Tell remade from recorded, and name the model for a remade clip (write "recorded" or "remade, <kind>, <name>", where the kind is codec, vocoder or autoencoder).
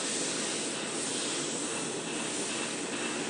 recorded